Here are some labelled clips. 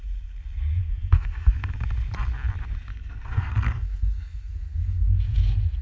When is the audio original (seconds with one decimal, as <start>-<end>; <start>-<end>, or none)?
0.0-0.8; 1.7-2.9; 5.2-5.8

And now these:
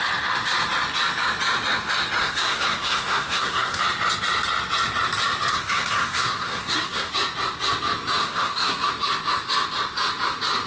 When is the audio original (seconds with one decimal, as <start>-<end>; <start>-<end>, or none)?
0.0-2.2; 3.8-5.5; 7.1-8.2; 8.9-10.7

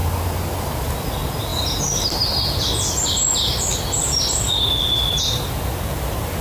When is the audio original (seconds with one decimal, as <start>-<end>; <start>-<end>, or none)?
0.0-6.4

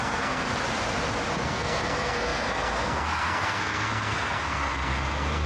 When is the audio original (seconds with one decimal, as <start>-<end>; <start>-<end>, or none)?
0.5-1.4

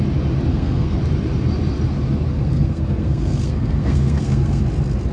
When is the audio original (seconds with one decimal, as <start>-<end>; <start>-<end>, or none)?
0.0-0.5; 1.0-2.4; 4.6-5.1